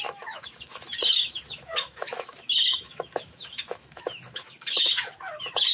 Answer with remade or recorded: remade